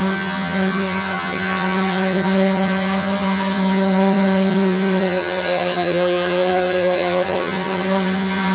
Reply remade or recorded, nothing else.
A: remade